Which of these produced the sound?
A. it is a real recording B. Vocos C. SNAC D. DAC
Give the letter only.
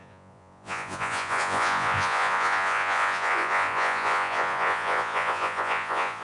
B